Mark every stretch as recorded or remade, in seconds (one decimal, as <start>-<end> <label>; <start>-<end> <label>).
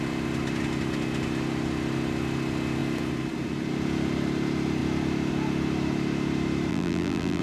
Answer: 0.0-6.7 recorded; 6.7-7.4 remade